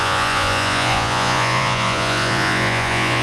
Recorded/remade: remade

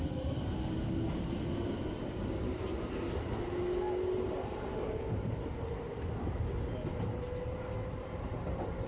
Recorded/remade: recorded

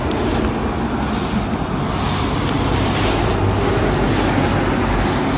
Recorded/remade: recorded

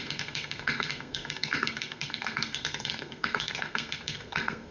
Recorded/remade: remade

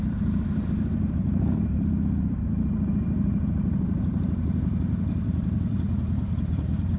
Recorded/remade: remade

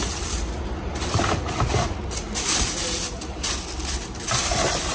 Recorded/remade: recorded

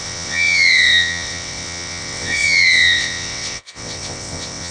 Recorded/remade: remade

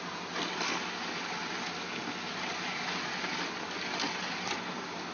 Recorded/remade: recorded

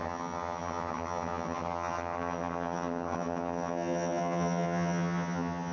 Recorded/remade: remade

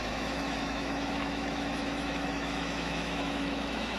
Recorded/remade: remade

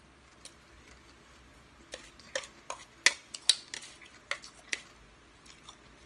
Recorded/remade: recorded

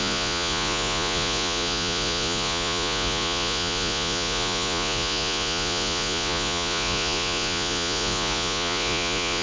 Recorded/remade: remade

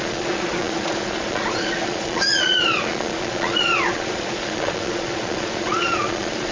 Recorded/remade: remade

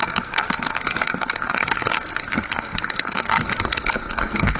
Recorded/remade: remade